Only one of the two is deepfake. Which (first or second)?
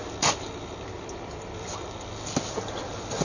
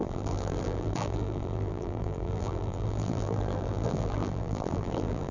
second